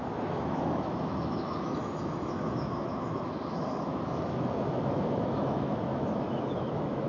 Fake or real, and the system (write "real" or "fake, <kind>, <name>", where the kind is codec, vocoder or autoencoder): fake, autoencoder, DAC-VAE